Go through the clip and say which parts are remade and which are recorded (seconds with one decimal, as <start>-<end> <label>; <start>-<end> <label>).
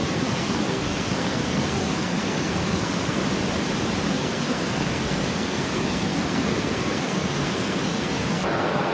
0.0-3.2 remade; 3.2-4.1 recorded; 4.1-8.9 remade